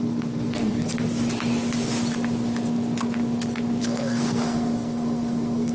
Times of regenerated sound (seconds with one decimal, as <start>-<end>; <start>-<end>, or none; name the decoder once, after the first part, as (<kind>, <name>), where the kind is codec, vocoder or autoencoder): 0.0-0.9 (codec, SNAC); 3.8-5.7